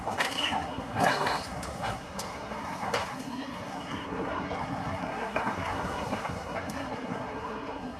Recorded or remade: remade